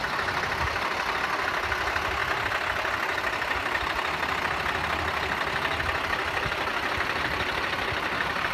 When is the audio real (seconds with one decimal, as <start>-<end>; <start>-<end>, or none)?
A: 0.0-6.7